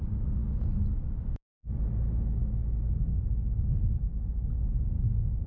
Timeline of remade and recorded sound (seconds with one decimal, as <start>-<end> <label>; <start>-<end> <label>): 0.0-5.5 recorded